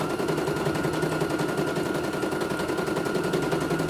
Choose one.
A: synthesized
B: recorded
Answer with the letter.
B